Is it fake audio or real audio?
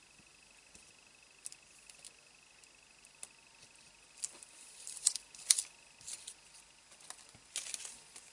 real